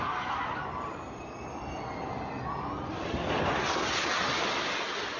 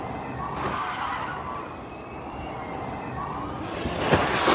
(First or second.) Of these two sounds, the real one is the first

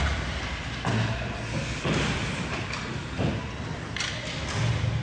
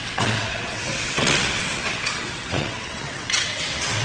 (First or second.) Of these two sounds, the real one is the first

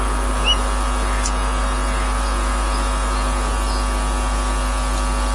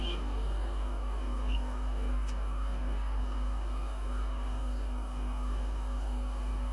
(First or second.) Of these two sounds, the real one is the first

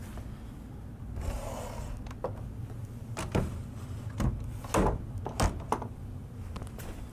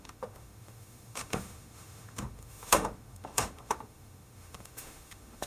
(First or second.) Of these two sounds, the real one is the first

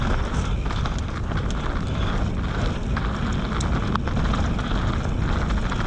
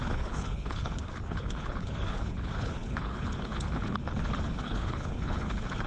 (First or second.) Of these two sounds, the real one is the first